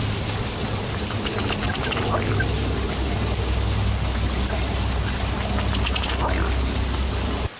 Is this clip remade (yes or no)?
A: no